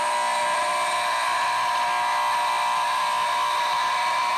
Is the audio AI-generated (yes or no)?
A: no